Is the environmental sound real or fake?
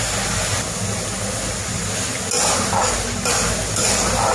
real